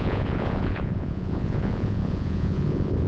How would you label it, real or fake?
fake